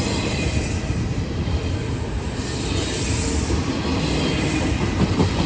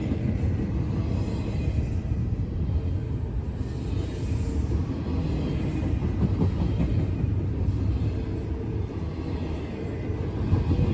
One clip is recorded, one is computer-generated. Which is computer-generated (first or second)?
first